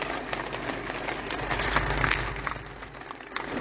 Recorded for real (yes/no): yes